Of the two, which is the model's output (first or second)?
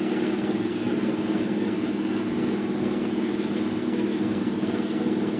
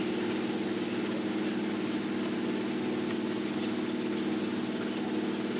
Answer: first